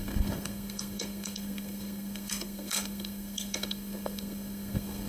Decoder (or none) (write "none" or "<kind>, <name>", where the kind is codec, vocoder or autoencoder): codec, SNAC